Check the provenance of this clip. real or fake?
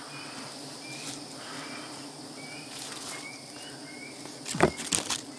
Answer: real